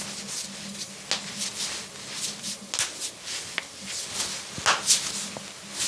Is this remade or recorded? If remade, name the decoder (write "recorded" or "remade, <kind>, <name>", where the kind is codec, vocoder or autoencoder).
recorded